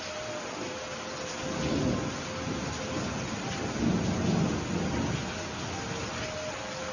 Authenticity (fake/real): real